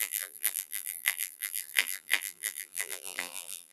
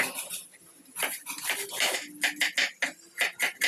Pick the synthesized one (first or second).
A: first